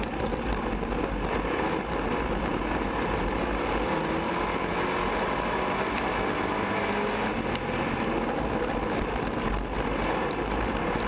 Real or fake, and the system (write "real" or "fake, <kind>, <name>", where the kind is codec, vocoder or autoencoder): real